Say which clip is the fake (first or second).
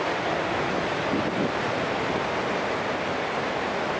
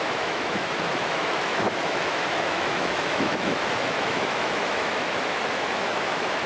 second